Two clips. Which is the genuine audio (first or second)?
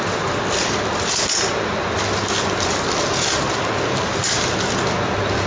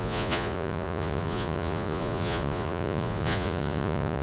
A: first